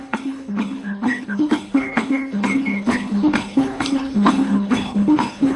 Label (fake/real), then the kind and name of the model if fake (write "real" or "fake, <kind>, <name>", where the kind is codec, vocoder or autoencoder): fake, codec, HILCodec